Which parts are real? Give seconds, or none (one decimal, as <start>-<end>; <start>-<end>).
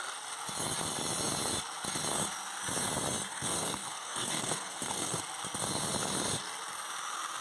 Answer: 0.0-3.3; 5.2-7.4